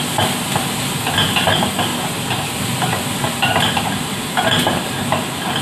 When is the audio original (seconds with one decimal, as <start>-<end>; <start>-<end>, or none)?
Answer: 0.0-3.5; 4.3-5.6